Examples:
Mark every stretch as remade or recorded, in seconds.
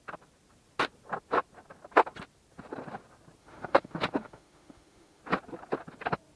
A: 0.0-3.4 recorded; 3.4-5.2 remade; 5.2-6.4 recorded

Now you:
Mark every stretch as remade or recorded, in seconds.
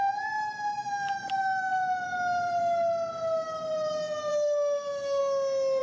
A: 0.0-1.7 remade; 1.7-4.3 recorded; 4.3-5.2 remade; 5.2-5.8 recorded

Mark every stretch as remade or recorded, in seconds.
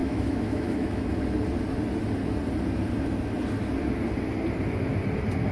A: 0.0-1.1 remade; 1.1-5.5 recorded